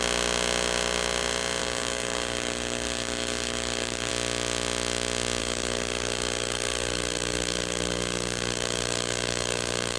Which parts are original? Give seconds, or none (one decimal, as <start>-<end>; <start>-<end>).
0.0-1.6; 4.1-5.4